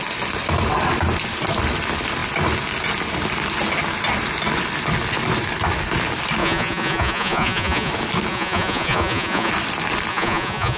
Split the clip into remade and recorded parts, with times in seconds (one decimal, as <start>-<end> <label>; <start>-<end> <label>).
0.0-6.4 recorded; 6.4-7.9 remade; 7.9-8.3 recorded; 8.3-9.5 remade; 9.5-10.1 recorded; 10.1-10.8 remade